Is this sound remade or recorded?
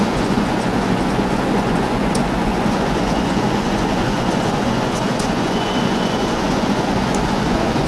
remade